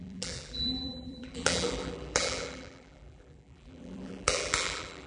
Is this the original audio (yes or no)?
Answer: no